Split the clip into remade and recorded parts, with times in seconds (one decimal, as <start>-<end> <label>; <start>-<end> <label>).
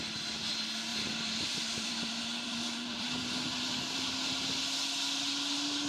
0.0-0.9 recorded; 0.9-4.4 remade; 4.4-5.9 recorded